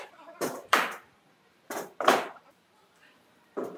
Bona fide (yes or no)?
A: no